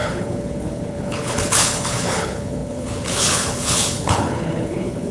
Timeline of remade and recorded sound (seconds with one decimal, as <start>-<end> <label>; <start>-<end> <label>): 0.0-5.1 remade